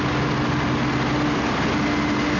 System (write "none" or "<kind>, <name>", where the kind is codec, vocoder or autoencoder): none